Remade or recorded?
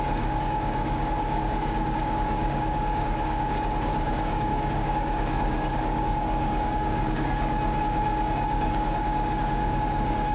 remade